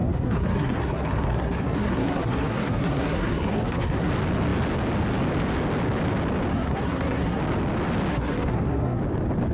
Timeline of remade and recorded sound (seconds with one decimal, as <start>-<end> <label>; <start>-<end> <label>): 0.0-4.1 remade; 4.1-6.5 recorded; 6.5-7.4 remade; 7.4-8.1 recorded; 8.1-9.0 remade; 9.0-9.5 recorded